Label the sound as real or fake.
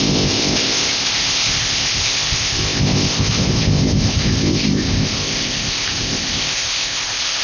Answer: fake